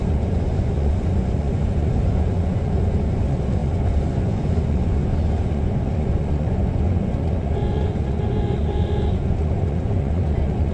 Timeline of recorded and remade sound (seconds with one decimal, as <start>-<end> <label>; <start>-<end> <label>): 0.0-10.7 remade